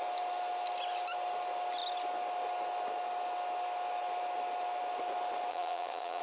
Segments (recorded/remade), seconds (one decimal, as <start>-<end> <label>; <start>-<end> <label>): 0.0-5.5 recorded; 5.5-6.2 remade